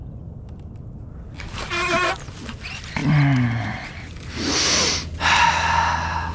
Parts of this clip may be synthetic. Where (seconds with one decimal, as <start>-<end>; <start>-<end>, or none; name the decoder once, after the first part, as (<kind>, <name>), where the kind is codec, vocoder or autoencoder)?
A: none